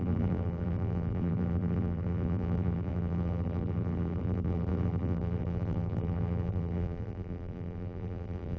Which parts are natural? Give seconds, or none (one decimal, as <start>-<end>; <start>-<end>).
none

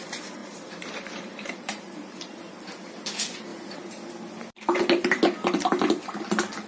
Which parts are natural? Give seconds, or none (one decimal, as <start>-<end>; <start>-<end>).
0.0-0.4; 2.3-6.7